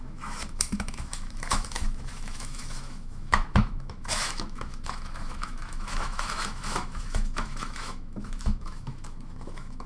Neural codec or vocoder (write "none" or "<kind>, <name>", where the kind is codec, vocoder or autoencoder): autoencoder, DAC-VAE